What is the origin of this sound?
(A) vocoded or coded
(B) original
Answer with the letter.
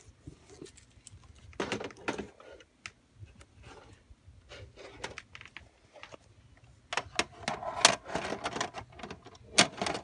B